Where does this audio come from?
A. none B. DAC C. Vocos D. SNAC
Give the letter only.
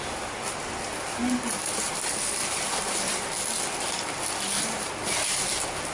A